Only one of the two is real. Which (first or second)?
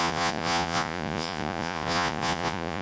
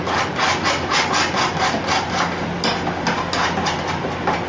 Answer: second